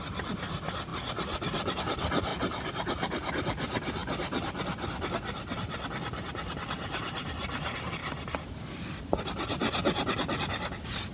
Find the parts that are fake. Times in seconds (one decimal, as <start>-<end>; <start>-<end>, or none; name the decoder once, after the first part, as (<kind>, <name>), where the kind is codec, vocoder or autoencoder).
8.0-9.2 (vocoder, BigVGAN v2)

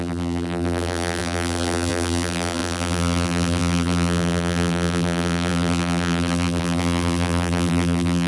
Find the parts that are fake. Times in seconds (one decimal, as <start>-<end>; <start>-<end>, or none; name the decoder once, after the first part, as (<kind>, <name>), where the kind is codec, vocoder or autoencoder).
0.0-8.3 (vocoder, BigVGAN v2)

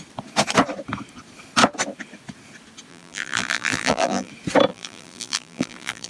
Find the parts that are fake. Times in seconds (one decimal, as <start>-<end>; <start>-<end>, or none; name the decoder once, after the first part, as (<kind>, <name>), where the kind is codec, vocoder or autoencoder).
2.9-4.3 (vocoder, BigVGAN v2); 4.7-6.1

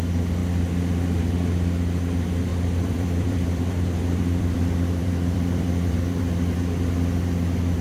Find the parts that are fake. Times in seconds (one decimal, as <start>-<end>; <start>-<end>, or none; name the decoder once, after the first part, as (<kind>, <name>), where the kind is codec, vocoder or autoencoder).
2.5-6.2 (vocoder, BigVGAN v2)